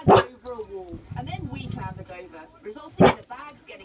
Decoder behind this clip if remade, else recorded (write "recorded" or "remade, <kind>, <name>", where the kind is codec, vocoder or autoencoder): recorded